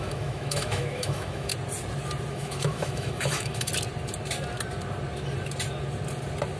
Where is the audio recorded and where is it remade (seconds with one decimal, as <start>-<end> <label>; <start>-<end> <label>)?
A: 0.0-1.5 remade; 1.5-2.3 recorded; 2.3-3.7 remade; 3.7-6.6 recorded